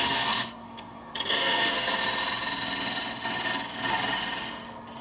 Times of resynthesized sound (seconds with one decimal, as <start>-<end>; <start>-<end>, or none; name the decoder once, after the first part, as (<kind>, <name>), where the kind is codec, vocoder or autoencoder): 0.0-1.9 (codec, SNAC)